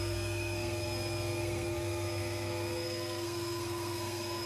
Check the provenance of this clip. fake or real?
fake